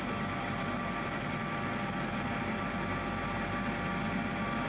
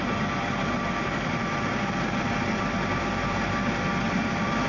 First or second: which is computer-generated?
second